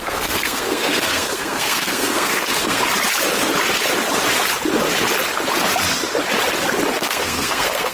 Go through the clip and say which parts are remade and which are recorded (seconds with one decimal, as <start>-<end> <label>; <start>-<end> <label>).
0.0-2.8 remade; 2.8-7.0 recorded; 7.0-7.9 remade